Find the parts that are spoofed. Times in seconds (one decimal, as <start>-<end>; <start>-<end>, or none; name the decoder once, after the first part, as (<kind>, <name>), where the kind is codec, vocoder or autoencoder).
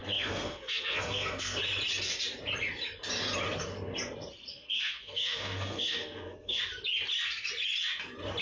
0.0-1.6 (codec, SNAC); 4.5-6.6